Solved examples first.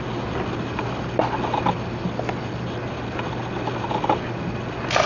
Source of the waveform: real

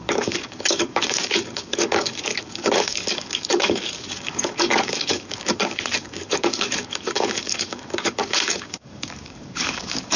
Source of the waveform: fake